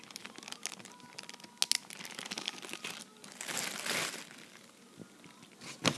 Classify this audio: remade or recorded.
recorded